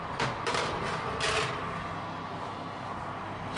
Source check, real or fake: real